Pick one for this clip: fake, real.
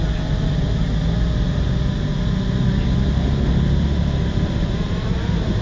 real